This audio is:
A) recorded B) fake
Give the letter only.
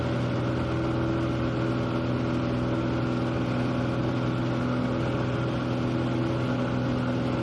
A